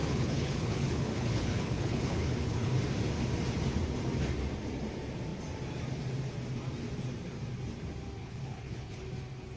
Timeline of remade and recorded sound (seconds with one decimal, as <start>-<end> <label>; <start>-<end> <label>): 0.0-2.7 remade; 2.7-8.2 recorded; 8.2-9.0 remade; 9.0-9.6 recorded